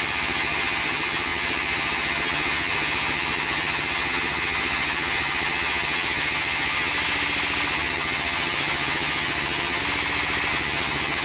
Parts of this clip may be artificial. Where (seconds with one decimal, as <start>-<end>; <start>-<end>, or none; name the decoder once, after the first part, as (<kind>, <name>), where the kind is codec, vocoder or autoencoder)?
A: 0.0-6.9 (vocoder, HiFi-GAN); 7.7-9.8; 10.5-11.2